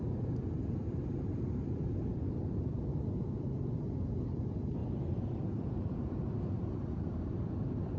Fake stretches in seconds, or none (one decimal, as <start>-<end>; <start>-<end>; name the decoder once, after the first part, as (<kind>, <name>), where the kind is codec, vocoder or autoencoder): 0.0-4.8 (vocoder, BigVGAN v2); 5.6-8.0